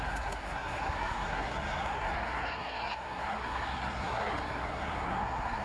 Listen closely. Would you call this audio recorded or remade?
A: remade